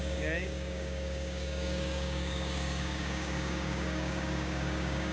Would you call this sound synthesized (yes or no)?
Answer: yes